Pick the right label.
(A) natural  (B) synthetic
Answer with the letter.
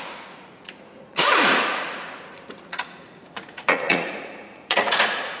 B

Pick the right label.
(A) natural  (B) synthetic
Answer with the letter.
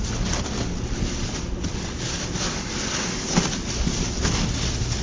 A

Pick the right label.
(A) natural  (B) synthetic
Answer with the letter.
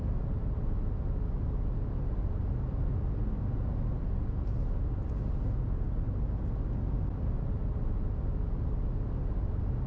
A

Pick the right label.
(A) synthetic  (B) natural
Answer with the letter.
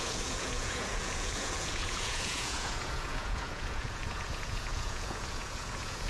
A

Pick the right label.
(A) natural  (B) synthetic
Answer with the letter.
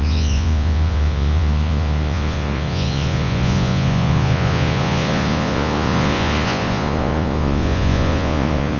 B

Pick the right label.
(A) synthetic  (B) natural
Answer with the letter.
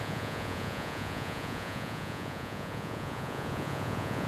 A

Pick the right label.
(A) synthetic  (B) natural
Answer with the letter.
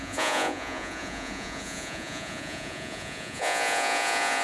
A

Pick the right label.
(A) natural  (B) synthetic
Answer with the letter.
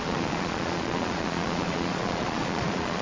B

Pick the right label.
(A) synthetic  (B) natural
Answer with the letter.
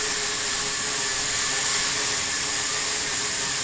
B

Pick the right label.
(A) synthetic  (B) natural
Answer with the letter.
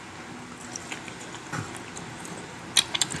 B